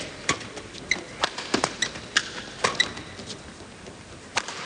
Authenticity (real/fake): fake